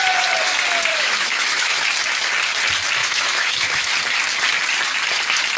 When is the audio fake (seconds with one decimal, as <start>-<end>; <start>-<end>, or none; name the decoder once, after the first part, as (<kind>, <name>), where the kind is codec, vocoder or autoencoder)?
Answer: 0.9-1.8 (autoencoder, DAC-VAE); 3.0-3.9